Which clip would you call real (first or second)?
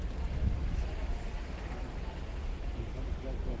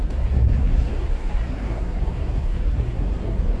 first